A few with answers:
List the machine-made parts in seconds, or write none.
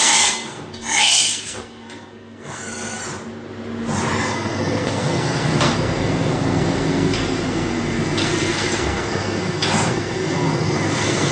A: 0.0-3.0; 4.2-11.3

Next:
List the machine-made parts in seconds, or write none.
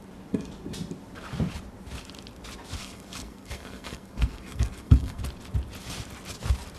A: 2.8-5.2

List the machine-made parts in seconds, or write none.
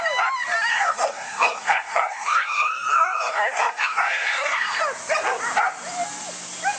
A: 0.7-4.8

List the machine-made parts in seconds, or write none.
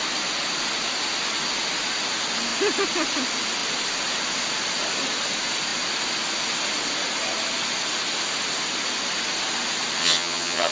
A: 10.0-10.7